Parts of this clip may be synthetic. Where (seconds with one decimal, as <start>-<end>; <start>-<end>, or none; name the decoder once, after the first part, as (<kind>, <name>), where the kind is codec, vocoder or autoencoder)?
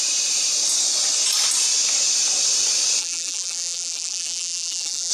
3.0-5.1 (vocoder, BigVGAN v2)